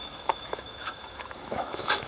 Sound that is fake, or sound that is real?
fake